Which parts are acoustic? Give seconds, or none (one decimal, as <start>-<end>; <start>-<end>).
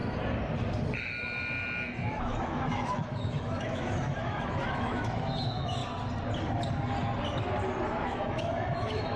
0.0-2.1; 5.8-7.9